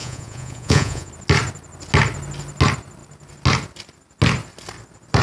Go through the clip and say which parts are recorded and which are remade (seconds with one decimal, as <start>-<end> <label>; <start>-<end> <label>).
0.0-1.1 remade; 1.1-5.2 recorded